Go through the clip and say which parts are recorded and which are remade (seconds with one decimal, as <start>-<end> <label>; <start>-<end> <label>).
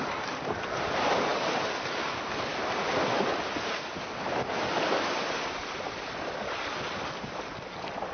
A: 0.0-8.1 recorded